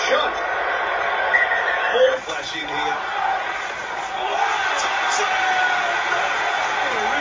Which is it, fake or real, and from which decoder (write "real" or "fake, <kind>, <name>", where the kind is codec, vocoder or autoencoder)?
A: real